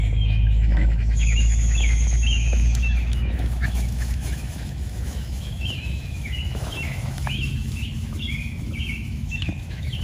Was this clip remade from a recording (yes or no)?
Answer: yes